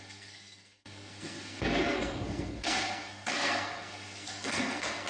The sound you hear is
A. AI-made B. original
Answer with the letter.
A